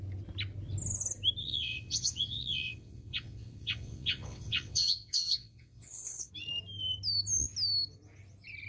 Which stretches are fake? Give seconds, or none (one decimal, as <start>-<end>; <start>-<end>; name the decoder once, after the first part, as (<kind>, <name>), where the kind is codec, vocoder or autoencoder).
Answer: 1.4-6.3 (vocoder, WaveNeXt)